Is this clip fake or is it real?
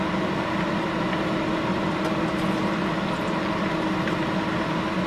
real